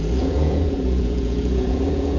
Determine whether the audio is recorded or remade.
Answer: remade